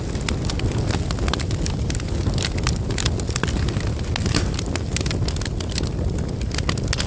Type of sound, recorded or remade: recorded